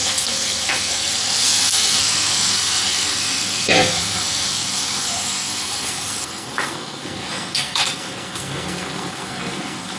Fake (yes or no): yes